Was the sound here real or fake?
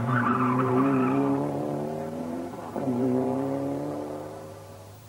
fake